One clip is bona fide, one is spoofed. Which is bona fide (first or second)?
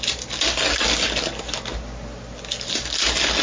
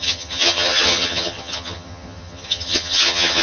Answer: first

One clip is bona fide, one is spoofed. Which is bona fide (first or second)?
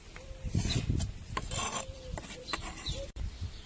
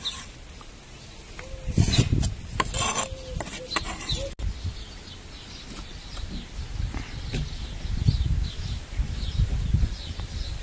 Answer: second